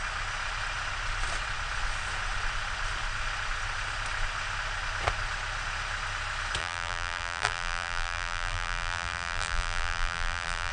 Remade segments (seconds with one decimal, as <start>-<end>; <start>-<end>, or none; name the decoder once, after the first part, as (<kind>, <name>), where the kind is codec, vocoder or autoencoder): 6.6-10.7 (vocoder, BigVGAN v2)